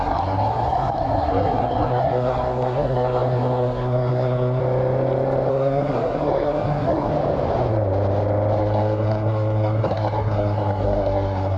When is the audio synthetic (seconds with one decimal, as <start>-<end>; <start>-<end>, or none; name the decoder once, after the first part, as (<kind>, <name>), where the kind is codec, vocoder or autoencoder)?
0.0-4.6 (codec, SNAC); 5.5-7.1; 8.6-11.6